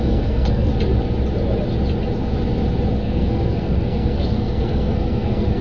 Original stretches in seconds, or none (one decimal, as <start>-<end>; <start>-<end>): 0.7-3.0